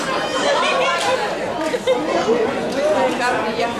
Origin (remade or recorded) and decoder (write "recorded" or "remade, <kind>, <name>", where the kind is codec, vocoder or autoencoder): recorded